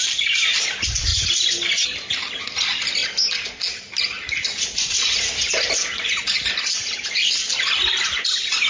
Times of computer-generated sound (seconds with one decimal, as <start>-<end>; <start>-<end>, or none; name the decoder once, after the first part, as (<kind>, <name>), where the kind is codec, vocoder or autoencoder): 0.0-1.1 (vocoder, BigVGAN v2); 1.7-3.0; 6.9-8.7